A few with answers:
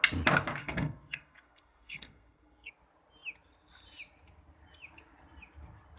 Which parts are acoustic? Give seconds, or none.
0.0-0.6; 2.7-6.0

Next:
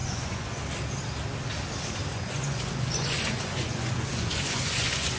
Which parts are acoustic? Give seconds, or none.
0.6-2.1

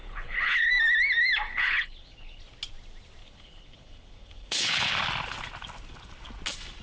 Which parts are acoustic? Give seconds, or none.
0.7-1.5; 2.4-3.2; 4.9-6.8

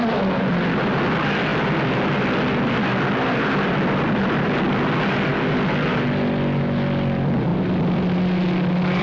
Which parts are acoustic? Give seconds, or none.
0.0-9.0

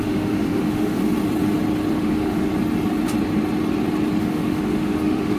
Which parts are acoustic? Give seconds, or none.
1.0-1.9; 2.5-4.2

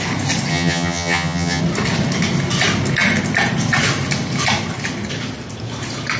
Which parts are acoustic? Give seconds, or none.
0.0-0.5; 1.6-6.2

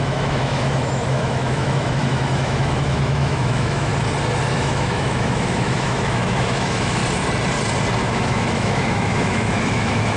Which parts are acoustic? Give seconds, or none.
3.9-4.5; 7.0-8.0

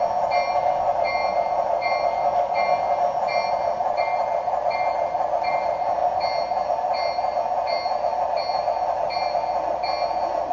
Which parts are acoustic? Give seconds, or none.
0.0-10.5